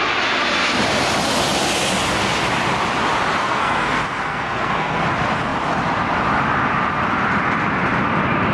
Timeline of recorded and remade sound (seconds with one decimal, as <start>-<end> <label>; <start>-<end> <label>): 0.0-3.4 recorded; 3.4-5.0 remade; 5.0-8.5 recorded